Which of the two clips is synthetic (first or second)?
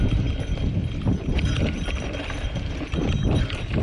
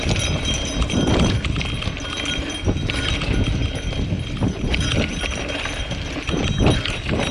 first